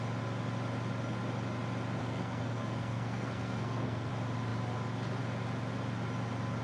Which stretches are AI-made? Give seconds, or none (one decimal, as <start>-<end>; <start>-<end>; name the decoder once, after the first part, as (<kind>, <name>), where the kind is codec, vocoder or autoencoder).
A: 2.0-4.1 (codec, SNAC)